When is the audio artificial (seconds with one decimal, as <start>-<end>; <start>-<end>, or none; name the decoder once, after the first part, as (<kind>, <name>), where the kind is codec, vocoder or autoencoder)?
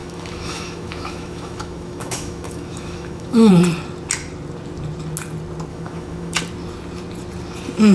0.0-3.5 (autoencoder, DAC-VAE); 5.7-6.4